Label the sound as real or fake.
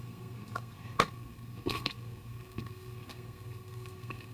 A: fake